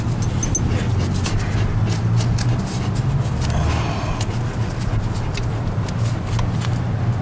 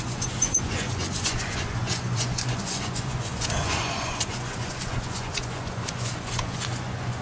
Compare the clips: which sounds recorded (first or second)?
first